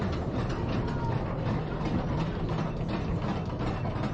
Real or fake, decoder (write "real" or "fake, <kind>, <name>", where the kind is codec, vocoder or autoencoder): real